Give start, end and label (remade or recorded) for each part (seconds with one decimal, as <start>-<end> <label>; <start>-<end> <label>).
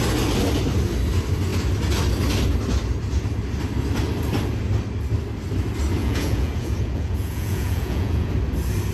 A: 0.0-6.0 recorded; 6.0-8.3 remade; 8.3-8.9 recorded